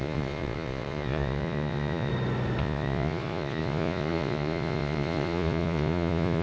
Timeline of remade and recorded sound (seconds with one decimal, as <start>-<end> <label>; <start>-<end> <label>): 0.0-2.1 remade; 2.1-2.6 recorded; 2.6-6.4 remade